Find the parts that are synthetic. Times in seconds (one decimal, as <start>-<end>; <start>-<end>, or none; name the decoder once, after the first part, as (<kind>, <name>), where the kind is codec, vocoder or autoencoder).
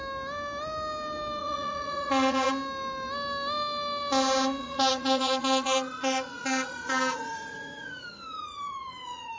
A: 1.4-2.5 (vocoder, Vocos); 4.6-9.4